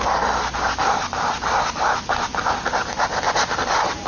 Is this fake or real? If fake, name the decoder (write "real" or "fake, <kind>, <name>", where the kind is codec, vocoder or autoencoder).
real